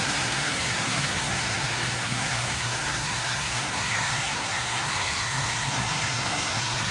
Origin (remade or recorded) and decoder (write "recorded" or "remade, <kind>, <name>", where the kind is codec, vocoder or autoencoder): remade, codec, SNAC